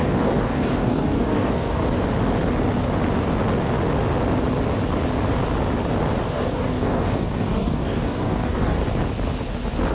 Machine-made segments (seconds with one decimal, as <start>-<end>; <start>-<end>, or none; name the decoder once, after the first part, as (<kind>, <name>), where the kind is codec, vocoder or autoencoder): 0.0-1.8 (codec, DAC); 6.2-8.8